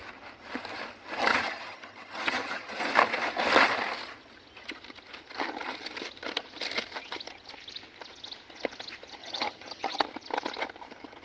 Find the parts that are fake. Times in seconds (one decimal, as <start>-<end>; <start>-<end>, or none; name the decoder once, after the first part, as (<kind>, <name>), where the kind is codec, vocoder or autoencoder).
1.3-2.8 (vocoder, HiFi-GAN); 9.2-10.0